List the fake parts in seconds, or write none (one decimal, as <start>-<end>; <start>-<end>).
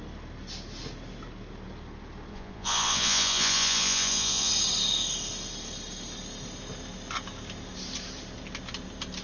2.3-4.5